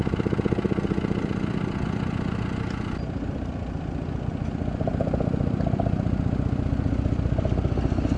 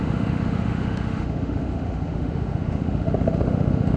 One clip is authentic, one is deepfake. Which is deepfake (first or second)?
second